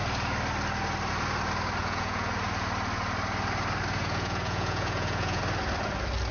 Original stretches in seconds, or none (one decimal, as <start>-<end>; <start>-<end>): 0.0-1.8; 2.3-4.0; 5.4-6.3